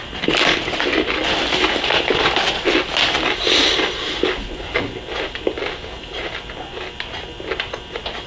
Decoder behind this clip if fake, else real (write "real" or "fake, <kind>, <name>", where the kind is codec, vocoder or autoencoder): real